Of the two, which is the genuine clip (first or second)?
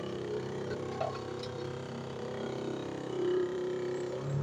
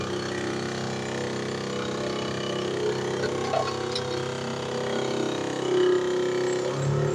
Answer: second